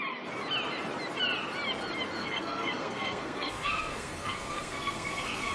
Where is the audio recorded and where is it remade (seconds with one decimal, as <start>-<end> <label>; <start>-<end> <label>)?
0.0-2.2 recorded; 2.2-5.5 remade